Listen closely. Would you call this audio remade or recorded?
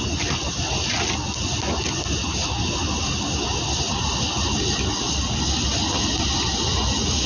recorded